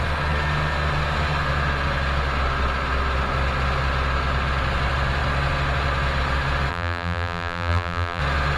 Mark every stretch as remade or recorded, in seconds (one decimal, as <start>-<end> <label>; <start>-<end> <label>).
0.0-6.7 recorded; 6.7-8.2 remade; 8.2-8.6 recorded